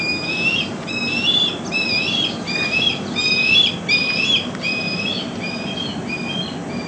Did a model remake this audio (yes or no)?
no